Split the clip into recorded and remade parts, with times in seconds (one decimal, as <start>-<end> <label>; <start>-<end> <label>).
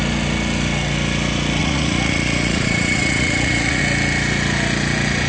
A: 0.0-1.6 recorded; 1.6-3.8 remade; 3.8-5.3 recorded